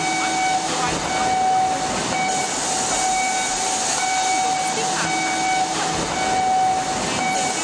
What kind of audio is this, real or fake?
real